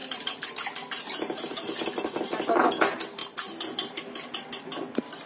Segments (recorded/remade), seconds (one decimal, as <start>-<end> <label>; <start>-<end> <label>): 0.0-5.3 recorded